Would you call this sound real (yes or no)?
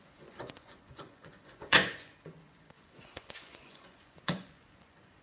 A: no